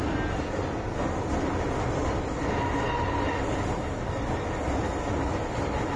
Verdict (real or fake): real